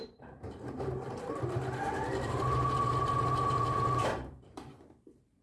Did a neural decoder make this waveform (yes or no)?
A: yes